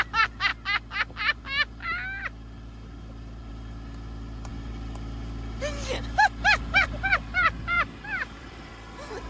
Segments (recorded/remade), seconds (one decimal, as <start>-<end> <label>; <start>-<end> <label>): 0.0-4.5 recorded; 4.5-8.7 remade; 8.7-9.3 recorded